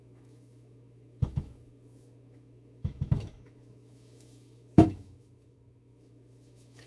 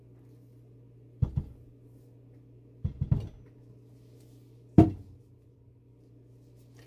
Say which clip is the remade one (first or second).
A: first